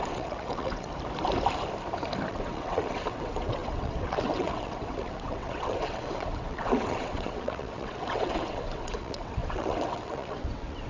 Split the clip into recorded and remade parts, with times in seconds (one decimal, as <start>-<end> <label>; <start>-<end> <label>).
0.0-0.9 remade; 0.9-2.3 recorded; 2.3-10.9 remade